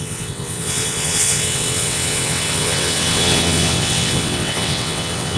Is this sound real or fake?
fake